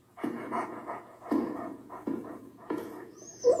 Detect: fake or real fake